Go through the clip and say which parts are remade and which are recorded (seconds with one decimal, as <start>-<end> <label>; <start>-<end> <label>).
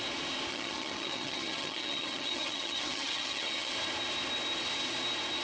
0.0-0.5 recorded; 0.5-3.7 remade; 3.7-5.4 recorded